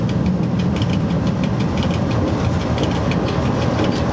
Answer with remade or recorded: recorded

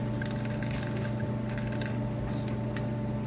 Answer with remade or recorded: recorded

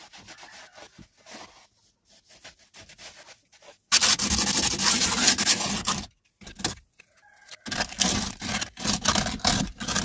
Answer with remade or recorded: recorded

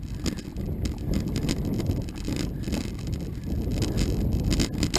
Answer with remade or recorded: recorded